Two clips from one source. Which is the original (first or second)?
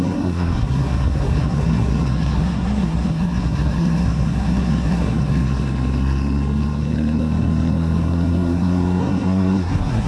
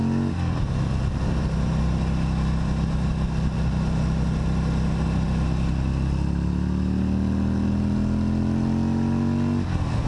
second